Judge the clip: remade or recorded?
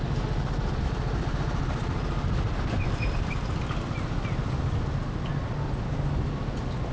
recorded